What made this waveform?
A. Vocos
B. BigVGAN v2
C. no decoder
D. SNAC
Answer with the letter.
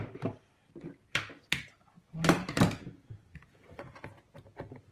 C